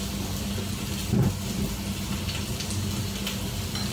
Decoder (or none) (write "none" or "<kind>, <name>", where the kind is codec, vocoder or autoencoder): none